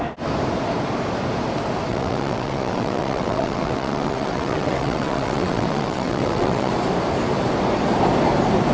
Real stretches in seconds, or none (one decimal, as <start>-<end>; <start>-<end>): 0.0-1.9; 6.7-8.7